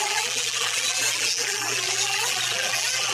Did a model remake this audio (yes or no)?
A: yes